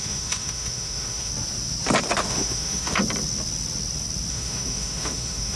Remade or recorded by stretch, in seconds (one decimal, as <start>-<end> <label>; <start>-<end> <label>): 0.0-1.3 remade; 1.3-2.2 recorded; 2.2-3.0 remade; 3.0-4.3 recorded; 4.3-5.6 remade